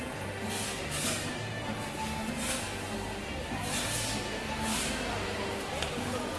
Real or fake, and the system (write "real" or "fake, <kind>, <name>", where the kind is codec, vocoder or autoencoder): real